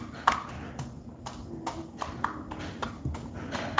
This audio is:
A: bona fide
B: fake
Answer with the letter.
A